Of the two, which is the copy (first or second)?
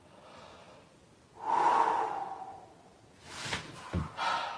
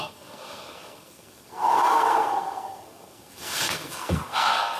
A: second